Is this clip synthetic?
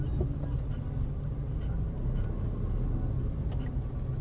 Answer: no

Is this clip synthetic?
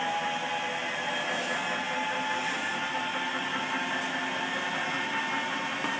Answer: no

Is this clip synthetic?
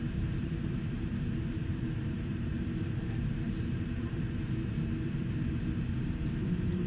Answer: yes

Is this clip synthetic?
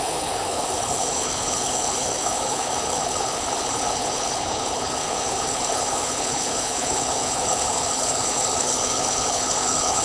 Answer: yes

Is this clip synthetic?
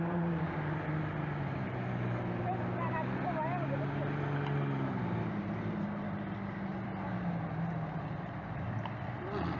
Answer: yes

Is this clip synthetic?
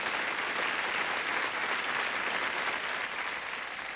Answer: no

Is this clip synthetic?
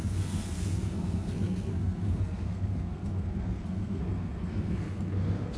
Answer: yes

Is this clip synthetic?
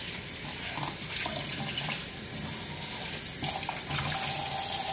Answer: no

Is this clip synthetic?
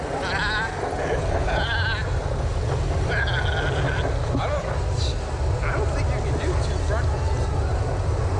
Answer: no